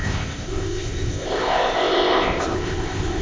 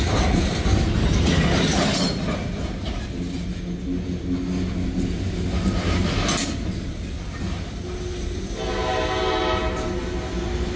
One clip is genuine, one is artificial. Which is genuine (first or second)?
second